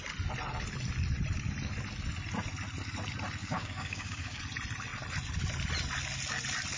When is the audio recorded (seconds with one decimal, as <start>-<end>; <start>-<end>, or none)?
0.0-3.4; 4.4-6.8